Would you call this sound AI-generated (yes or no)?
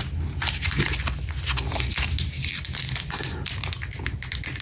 no